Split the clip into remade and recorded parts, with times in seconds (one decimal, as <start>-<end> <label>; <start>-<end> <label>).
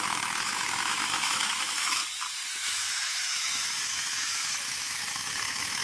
0.0-2.0 remade; 2.0-2.5 recorded; 2.5-5.8 remade